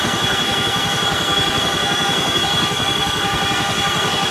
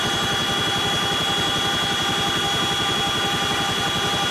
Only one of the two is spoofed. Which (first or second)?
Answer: first